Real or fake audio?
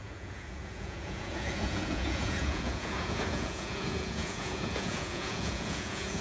fake